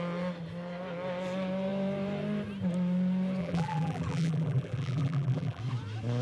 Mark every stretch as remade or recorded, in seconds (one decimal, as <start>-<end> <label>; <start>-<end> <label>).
0.0-3.4 recorded; 3.4-5.6 remade; 5.6-6.2 recorded